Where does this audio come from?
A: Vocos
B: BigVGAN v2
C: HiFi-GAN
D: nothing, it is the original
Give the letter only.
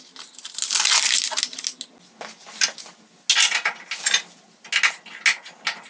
D